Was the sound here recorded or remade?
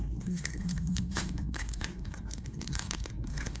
remade